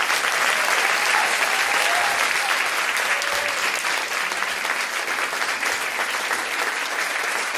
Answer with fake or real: real